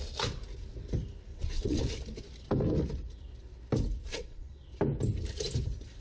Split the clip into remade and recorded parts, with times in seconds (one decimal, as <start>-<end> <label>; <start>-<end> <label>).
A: 0.0-1.3 recorded; 1.3-1.8 remade; 1.8-4.1 recorded; 4.1-4.7 remade; 4.7-6.0 recorded